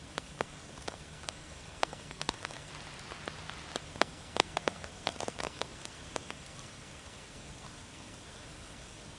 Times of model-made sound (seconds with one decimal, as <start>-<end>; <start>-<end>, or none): 0.0-2.7; 3.8-9.2